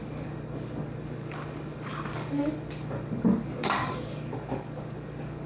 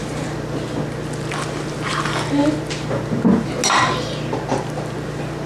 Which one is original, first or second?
second